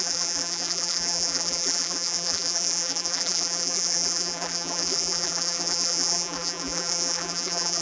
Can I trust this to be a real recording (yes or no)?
no